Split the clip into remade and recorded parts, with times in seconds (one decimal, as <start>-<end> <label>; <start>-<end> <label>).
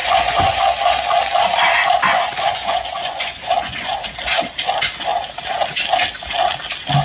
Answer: 0.0-0.6 remade; 0.6-2.1 recorded; 2.1-4.0 remade; 4.0-7.0 recorded